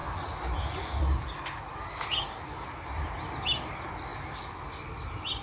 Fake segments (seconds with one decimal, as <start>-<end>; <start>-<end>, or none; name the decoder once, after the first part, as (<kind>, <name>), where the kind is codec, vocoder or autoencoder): none